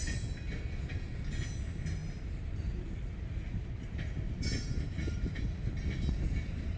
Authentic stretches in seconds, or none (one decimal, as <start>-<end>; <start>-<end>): 0.0-6.8